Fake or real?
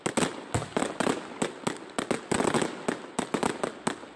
real